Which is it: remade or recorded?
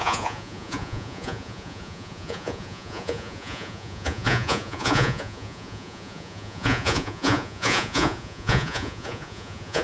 remade